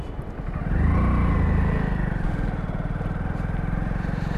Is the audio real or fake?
real